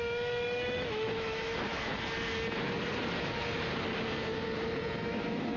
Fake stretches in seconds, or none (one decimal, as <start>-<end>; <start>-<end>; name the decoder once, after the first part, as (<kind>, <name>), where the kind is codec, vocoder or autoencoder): 0.0-1.9 (autoencoder, DAC-VAE); 5.0-5.6